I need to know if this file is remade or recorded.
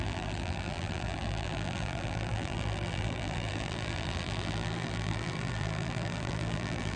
remade